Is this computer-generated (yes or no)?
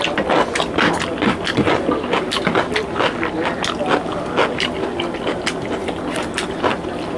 no